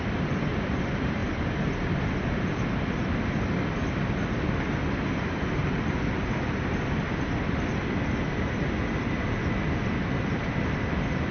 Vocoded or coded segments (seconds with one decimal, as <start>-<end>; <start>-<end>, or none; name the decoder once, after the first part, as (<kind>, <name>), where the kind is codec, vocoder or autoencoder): none